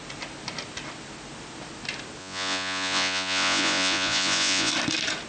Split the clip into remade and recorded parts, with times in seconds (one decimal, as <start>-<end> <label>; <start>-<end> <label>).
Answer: 0.0-2.2 recorded; 2.2-4.7 remade; 4.7-5.3 recorded